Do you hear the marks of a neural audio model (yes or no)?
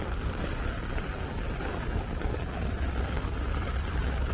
no